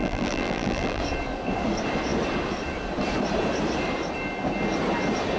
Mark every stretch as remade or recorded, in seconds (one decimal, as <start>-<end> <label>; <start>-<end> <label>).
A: 0.0-1.0 remade; 1.0-5.4 recorded